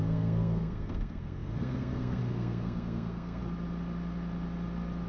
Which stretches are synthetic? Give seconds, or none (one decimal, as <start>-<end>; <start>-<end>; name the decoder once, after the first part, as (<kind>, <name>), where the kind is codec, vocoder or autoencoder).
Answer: 0.0-3.4 (codec, SNAC)